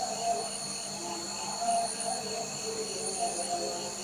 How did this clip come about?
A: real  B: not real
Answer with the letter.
A